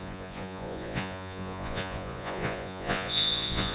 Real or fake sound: fake